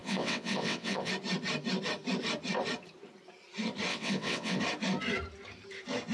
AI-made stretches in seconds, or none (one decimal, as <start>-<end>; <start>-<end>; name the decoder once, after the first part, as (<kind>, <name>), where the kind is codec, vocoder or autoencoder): 0.0-1.1 (vocoder, WaveNeXt); 3.9-4.6

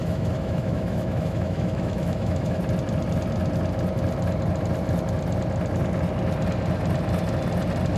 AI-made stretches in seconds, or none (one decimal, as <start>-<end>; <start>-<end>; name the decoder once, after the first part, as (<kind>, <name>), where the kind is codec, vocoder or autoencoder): 0.0-2.6 (autoencoder, DAC-VAE)

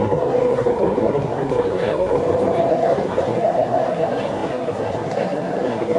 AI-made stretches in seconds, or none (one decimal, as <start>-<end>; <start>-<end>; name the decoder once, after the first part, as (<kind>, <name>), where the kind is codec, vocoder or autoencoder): 0.0-2.2 (codec, SNAC); 2.7-6.0

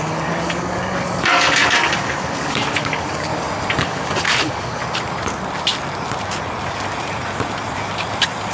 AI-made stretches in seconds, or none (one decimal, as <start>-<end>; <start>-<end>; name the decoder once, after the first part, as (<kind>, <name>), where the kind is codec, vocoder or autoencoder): 0.0-3.3 (codec, DAC); 3.8-4.8